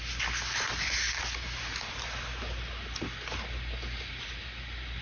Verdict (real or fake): real